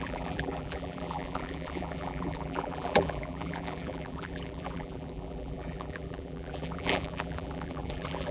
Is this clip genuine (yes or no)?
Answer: no